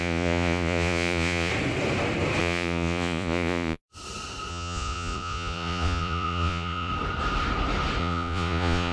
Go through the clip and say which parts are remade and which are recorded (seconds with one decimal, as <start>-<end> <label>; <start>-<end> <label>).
0.0-1.5 remade; 1.5-2.4 recorded; 2.4-3.8 remade; 3.8-4.5 recorded; 4.5-6.9 remade; 6.9-8.0 recorded; 8.0-8.9 remade